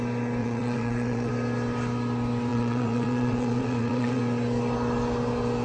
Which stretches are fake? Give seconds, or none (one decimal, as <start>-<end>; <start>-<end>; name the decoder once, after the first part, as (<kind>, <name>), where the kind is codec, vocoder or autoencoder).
0.4-1.3 (vocoder, WaveNeXt); 2.5-4.2